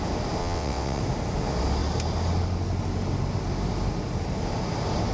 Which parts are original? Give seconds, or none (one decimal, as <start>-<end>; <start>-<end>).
0.0-0.4; 1.0-5.1